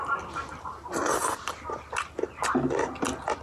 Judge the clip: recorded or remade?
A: recorded